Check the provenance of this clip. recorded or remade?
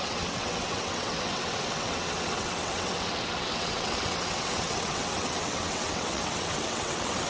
remade